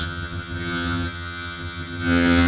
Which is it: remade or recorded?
remade